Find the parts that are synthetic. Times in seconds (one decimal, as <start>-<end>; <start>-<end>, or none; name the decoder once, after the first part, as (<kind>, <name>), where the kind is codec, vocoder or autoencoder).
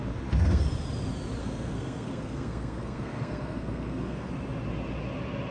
0.0-0.6 (codec, SNAC); 1.4-4.3